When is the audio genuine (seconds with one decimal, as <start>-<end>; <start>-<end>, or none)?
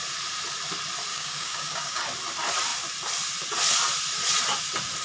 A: 0.0-1.1; 2.0-5.0